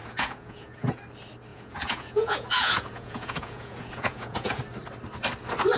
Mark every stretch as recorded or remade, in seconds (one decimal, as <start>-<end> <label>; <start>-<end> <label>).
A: 0.0-1.0 remade; 1.0-1.5 recorded; 1.5-4.6 remade; 4.6-5.8 recorded